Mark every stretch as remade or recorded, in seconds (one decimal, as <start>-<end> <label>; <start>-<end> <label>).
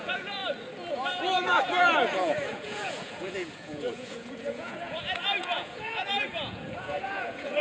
0.0-0.4 remade; 0.4-0.9 recorded; 0.9-7.6 remade